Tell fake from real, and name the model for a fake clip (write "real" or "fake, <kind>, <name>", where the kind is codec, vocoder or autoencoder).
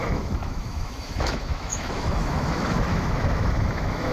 fake, autoencoder, DAC-VAE